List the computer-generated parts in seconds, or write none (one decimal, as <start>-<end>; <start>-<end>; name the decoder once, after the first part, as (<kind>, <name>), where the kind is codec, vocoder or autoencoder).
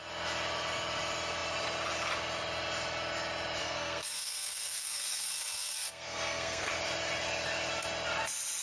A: 3.6-6.7 (codec, SNAC)